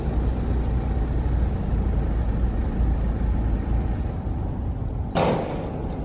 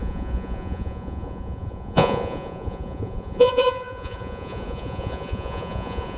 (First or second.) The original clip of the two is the first